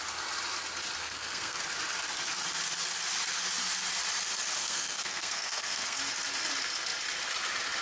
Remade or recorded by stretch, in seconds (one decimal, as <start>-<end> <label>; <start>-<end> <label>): 0.0-1.0 recorded; 1.0-1.6 remade; 1.6-4.6 recorded; 4.6-6.0 remade; 6.0-7.8 recorded